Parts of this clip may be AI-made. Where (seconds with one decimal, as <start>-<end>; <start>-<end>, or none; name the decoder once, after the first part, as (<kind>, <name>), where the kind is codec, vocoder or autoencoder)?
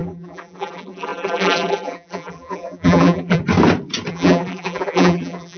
0.0-3.4 (vocoder, BigVGAN v2); 4.1-5.6